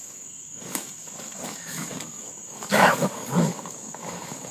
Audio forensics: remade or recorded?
remade